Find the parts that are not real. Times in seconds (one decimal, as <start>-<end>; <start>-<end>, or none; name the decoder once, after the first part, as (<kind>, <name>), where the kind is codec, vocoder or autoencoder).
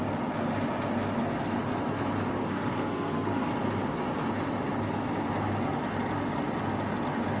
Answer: 2.4-3.5 (codec, SNAC)